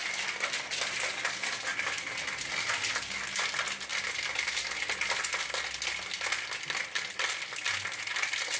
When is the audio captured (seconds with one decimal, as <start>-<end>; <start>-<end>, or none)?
0.0-8.6